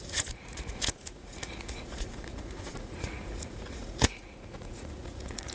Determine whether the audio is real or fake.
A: fake